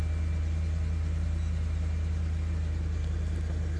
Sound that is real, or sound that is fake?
real